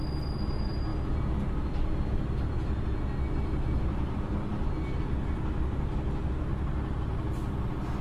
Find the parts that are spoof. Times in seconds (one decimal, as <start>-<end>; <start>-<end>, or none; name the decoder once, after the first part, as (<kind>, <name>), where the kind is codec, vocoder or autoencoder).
none